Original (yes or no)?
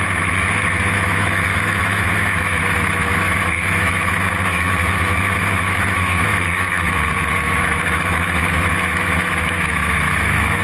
no